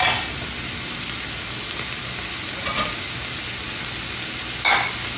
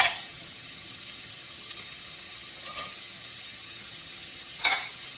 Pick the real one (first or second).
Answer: first